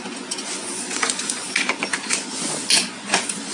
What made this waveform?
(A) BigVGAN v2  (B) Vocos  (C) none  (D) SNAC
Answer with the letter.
B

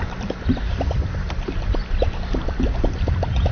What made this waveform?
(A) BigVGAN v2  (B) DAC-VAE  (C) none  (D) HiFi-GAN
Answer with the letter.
C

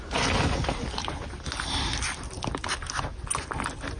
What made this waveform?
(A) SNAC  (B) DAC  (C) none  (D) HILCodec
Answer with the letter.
C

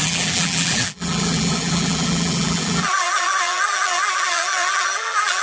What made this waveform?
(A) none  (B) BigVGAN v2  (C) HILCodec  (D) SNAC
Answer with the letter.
B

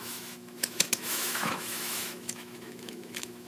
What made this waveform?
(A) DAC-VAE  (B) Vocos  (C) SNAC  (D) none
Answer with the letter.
A